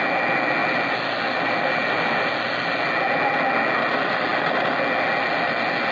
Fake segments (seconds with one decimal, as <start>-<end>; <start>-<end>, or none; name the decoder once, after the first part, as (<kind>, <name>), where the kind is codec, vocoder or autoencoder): none